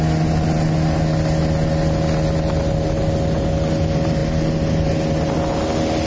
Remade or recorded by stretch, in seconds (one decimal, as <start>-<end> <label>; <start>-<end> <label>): 0.0-6.1 recorded